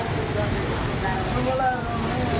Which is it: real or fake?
real